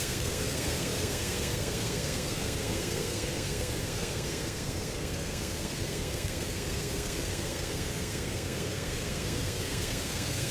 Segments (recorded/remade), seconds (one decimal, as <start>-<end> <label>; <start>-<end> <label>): 0.0-10.5 remade